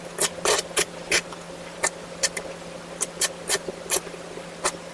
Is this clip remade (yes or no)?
no